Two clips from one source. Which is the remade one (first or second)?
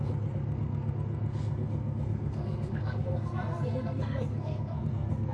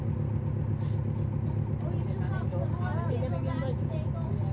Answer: first